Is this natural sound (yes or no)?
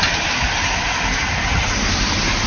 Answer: yes